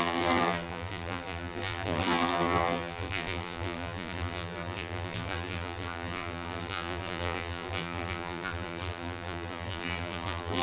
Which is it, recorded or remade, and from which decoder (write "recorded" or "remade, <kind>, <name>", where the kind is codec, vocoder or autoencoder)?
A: remade, vocoder, BigVGAN v2